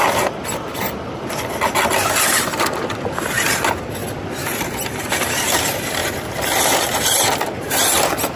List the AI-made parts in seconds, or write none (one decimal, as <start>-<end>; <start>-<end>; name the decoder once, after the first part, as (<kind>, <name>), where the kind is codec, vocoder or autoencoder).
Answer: none